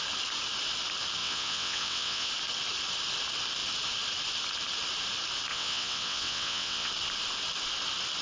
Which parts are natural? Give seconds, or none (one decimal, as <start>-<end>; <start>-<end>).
0.0-1.2; 2.3-5.5; 6.9-8.2